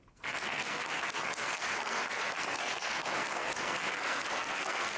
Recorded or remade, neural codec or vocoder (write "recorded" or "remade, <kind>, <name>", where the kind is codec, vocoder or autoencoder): remade, codec, SNAC